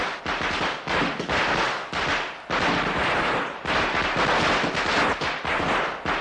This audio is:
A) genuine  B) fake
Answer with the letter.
A